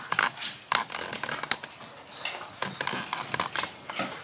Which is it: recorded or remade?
recorded